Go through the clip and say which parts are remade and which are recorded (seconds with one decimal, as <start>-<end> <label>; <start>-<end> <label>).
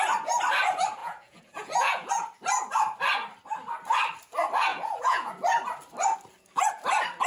0.0-1.0 recorded; 1.0-2.1 remade; 2.1-4.7 recorded; 4.7-5.3 remade; 5.3-7.3 recorded